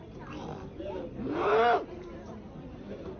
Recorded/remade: recorded